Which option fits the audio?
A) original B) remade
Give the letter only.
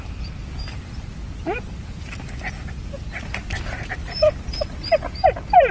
B